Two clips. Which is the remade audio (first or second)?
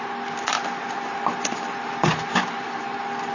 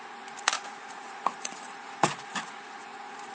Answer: second